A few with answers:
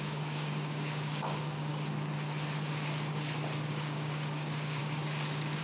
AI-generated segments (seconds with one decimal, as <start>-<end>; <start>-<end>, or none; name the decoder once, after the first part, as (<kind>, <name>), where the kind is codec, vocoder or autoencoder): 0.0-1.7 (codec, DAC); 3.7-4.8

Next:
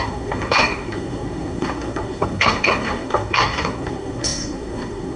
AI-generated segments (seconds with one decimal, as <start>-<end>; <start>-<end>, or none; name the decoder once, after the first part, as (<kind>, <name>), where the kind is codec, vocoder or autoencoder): 0.0-5.2 (codec, SNAC)

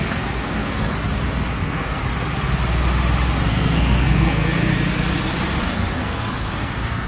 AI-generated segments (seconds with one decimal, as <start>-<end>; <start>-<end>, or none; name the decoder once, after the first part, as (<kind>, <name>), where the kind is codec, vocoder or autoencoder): 0.0-1.0 (codec, SNAC); 1.6-2.0; 3.5-4.7; 5.6-7.1

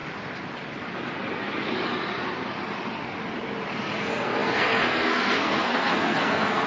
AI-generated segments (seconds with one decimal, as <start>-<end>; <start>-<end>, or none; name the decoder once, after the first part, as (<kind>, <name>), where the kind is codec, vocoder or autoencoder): 4.0-6.7 (codec, SNAC)

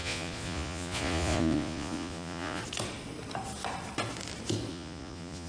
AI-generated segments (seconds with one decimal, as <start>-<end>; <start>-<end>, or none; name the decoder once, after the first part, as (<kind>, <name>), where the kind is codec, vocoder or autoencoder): 0.0-2.6 (vocoder, Vocos); 4.7-5.5

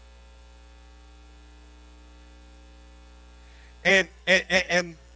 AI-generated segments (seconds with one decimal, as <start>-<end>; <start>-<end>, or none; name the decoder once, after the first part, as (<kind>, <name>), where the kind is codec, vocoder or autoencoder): 3.9-5.2 (codec, SNAC)